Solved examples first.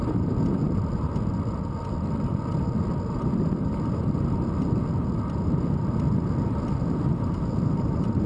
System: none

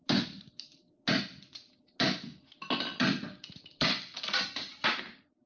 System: none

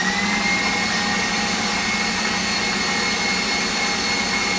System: none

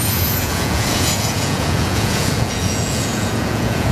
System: vocoder, Vocos